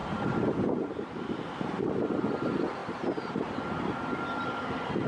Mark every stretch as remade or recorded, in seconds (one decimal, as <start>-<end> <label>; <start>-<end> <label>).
0.0-0.6 remade; 0.6-2.8 recorded; 2.8-3.6 remade; 3.6-5.1 recorded